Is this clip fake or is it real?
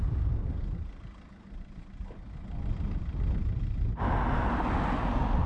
real